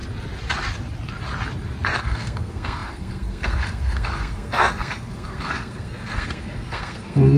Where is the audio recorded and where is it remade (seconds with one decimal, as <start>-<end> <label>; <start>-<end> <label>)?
0.0-2.0 recorded; 2.0-7.4 remade